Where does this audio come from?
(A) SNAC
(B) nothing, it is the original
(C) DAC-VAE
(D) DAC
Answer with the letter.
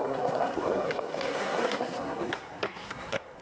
A